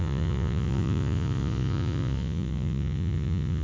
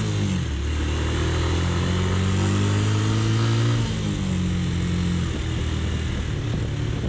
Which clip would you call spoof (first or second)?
first